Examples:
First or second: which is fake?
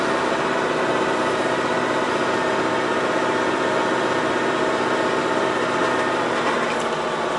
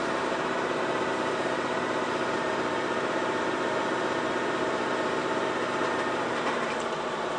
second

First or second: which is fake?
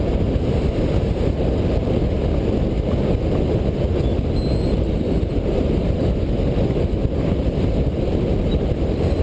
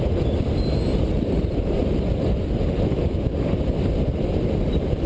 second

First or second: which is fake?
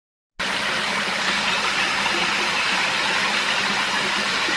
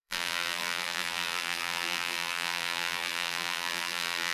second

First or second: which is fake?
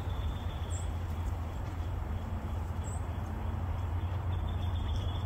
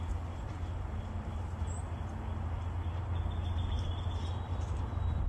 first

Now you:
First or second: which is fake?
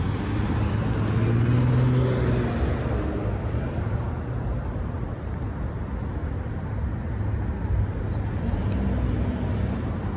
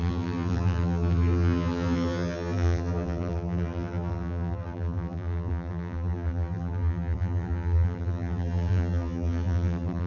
second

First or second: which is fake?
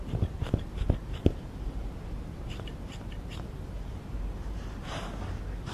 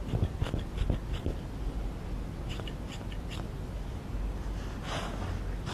first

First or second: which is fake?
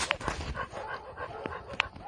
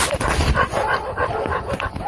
second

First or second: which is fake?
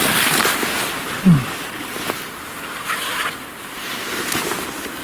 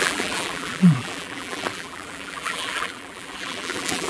second